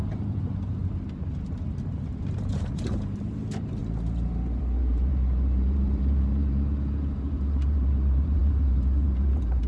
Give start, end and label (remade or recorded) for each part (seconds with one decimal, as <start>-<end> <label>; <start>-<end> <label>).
0.0-0.8 remade; 0.8-2.3 recorded; 2.3-9.7 remade